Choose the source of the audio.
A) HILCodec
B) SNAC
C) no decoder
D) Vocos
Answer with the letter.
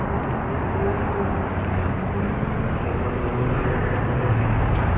C